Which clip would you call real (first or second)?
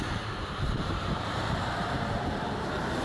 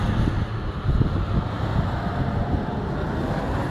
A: second